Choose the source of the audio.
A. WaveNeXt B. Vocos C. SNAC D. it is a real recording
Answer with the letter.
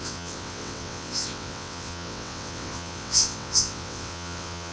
A